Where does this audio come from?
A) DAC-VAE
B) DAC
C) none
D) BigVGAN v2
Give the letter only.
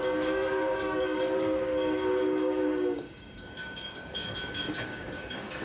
B